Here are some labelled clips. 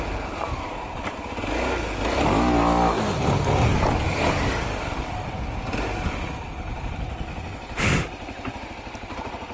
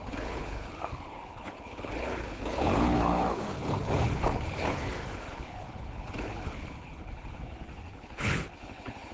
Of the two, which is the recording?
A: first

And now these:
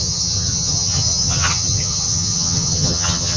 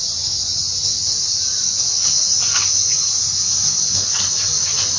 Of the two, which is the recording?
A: second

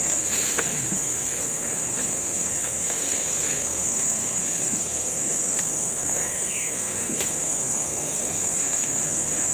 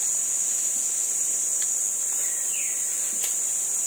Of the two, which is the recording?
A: second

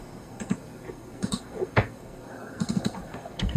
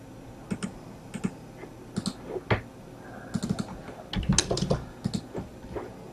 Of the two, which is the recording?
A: second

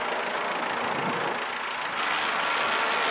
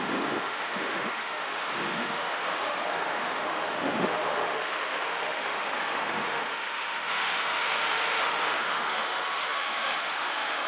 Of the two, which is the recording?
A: first